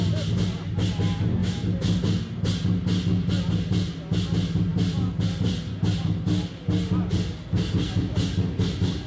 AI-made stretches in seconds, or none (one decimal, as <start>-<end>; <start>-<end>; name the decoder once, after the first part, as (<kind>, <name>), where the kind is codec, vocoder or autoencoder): 7.4-7.9 (codec, SNAC)